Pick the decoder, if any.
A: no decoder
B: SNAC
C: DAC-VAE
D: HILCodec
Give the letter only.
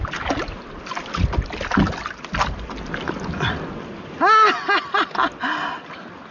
A